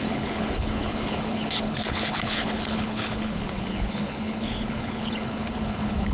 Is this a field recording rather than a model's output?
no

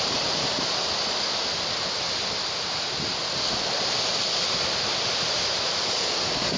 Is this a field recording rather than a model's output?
yes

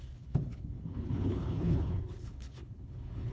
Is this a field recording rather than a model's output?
no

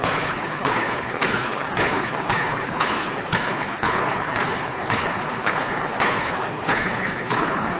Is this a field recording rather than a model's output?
no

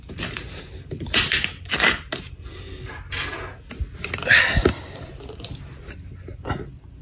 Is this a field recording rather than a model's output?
yes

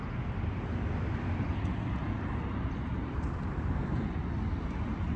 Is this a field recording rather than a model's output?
yes